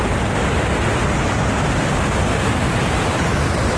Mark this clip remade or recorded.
recorded